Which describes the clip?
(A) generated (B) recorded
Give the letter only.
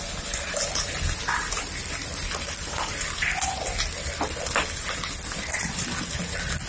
B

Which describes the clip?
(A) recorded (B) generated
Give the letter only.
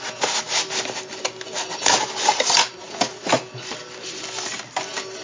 A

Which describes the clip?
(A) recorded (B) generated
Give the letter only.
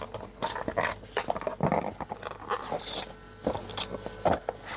A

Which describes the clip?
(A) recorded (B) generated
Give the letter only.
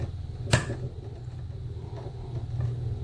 A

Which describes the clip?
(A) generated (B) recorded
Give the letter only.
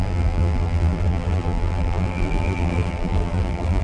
A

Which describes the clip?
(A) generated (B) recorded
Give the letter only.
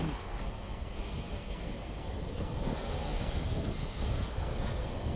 A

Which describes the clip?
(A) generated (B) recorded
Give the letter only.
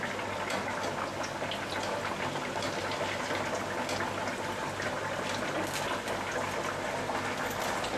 B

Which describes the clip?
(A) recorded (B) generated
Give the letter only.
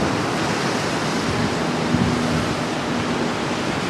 A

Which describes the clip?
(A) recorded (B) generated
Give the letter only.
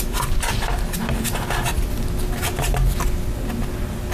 A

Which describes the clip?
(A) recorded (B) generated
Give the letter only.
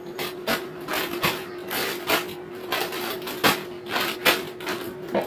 A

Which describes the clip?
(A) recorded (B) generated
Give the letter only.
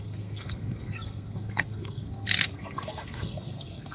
B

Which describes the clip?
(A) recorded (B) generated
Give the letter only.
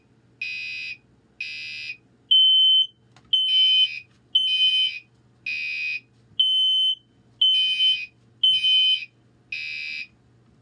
A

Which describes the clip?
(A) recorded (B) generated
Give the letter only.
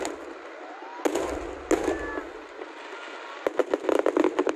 A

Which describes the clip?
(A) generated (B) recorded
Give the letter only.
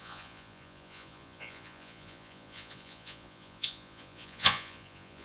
A